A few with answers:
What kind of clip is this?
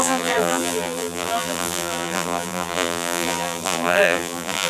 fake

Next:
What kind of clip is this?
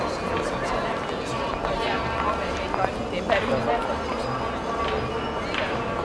real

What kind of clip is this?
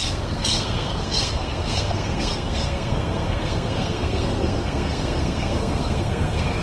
fake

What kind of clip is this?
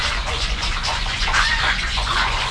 fake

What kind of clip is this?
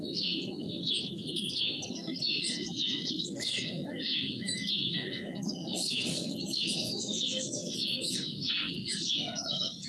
fake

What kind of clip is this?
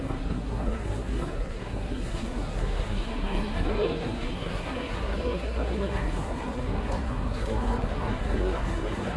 fake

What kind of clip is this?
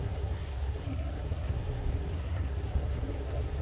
fake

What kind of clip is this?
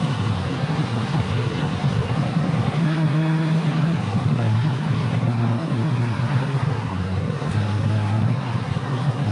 fake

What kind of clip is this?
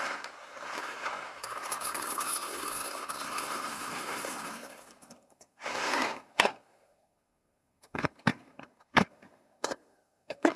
fake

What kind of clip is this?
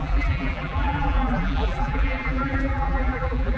fake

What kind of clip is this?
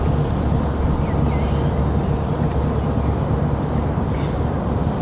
real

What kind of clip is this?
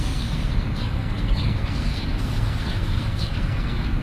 fake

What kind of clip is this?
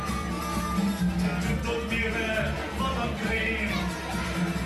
real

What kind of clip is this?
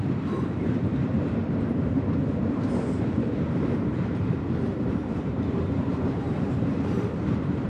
fake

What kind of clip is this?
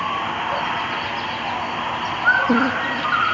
real